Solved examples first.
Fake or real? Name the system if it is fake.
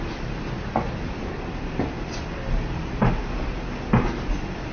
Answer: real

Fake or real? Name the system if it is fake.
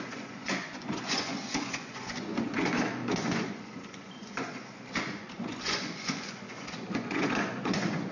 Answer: fake, vocoder, Vocos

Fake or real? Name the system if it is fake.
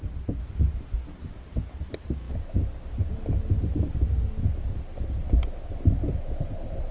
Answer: real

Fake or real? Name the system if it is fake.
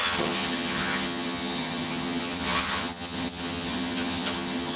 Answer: fake, vocoder, HiFi-GAN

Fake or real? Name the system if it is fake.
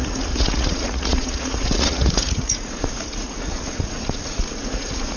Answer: fake, vocoder, Vocos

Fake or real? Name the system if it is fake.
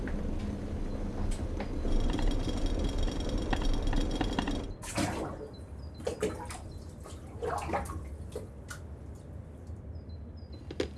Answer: real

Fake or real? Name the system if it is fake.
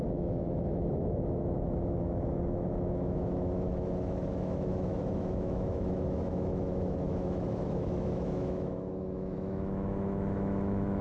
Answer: fake, autoencoder, DAC-VAE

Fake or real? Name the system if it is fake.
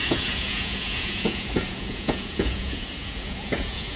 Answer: fake, vocoder, Vocos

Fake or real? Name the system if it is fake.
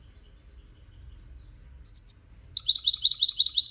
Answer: real